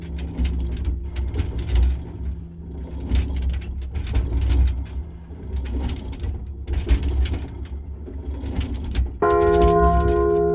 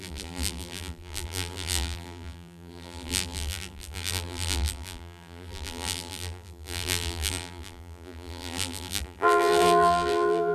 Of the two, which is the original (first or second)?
first